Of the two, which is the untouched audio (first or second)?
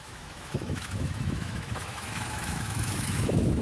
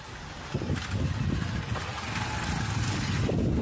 second